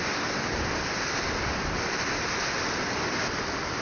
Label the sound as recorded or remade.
recorded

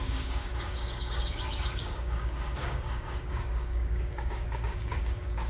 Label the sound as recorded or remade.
remade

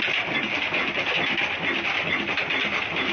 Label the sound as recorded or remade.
recorded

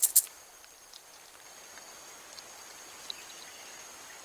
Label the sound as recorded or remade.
remade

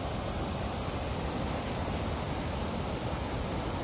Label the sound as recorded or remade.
recorded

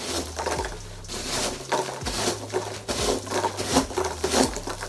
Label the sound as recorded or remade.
recorded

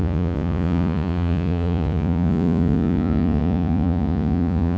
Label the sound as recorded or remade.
remade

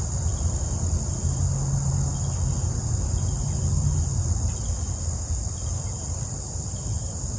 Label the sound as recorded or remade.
recorded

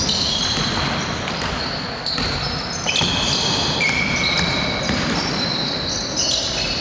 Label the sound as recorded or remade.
recorded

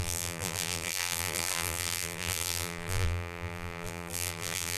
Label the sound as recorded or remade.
remade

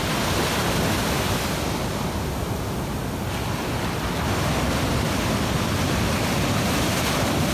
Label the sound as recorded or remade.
recorded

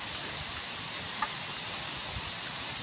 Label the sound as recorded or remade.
recorded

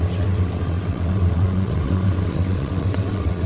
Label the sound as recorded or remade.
remade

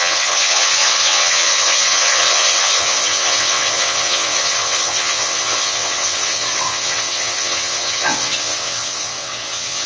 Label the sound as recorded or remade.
remade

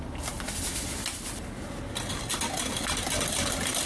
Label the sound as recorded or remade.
recorded